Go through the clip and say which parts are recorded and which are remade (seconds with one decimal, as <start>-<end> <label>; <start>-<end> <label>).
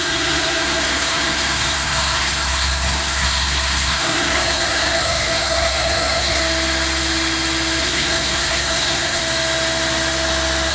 0.0-6.4 remade; 6.4-7.8 recorded; 7.8-9.2 remade; 9.2-10.7 recorded